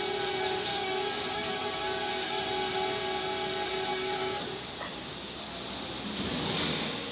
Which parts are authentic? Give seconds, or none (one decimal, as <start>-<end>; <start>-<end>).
0.0-0.7; 2.4-3.9; 5.4-7.1